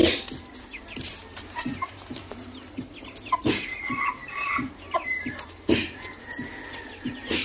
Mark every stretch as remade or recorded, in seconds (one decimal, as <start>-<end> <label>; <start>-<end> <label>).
0.0-1.3 recorded; 1.3-2.9 remade; 2.9-4.2 recorded; 4.2-6.5 remade; 6.5-7.4 recorded